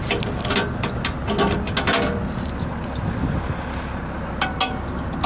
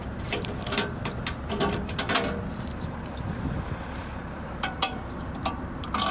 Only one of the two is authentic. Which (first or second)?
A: first